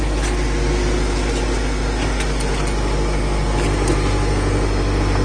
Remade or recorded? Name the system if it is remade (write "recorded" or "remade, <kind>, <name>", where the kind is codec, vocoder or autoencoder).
recorded